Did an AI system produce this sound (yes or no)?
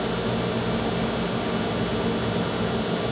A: no